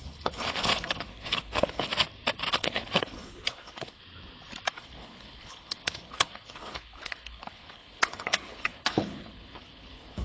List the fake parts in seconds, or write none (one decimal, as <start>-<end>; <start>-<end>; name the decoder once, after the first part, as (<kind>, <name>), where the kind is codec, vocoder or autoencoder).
0.0-1.9 (codec, HILCodec); 2.5-4.0; 4.7-10.2